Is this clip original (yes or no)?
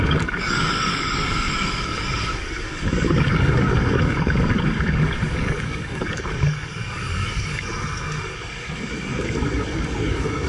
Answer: no